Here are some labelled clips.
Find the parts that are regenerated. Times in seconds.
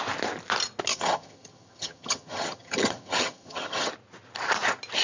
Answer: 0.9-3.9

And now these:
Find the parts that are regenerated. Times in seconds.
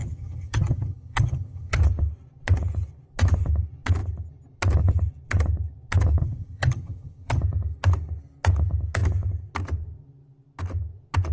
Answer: 0.0-1.8; 6.2-7.4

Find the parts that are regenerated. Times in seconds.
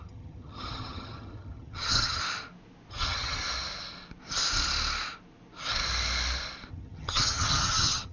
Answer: 0.0-2.2; 2.9-3.4; 6.7-8.1